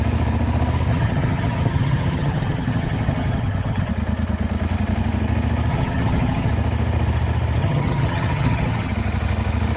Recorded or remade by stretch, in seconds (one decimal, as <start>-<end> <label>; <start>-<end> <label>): 0.0-0.9 recorded; 0.9-3.9 remade; 3.9-5.7 recorded; 5.7-6.5 remade; 6.5-7.6 recorded; 7.6-8.9 remade; 8.9-9.8 recorded